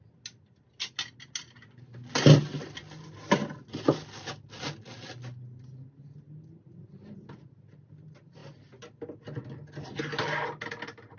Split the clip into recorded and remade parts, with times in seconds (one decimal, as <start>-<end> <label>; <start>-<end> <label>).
0.0-11.2 recorded